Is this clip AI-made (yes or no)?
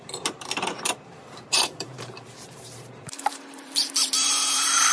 yes